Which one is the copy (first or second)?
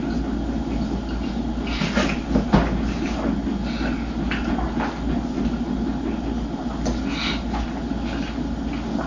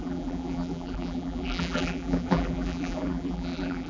second